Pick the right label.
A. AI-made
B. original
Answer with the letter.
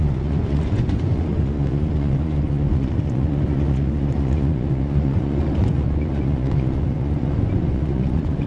A